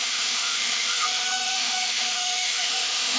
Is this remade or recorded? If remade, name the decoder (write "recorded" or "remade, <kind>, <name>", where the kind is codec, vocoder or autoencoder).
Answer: remade, autoencoder, DAC-VAE